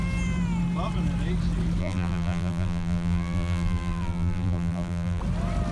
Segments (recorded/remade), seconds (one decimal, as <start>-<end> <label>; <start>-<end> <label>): 0.0-1.8 recorded; 1.8-5.2 remade; 5.2-5.7 recorded